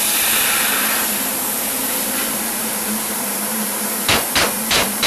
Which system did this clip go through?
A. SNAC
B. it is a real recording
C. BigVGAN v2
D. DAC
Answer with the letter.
C